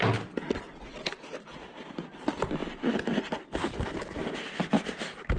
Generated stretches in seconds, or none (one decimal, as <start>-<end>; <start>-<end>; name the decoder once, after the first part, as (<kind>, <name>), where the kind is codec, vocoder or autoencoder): none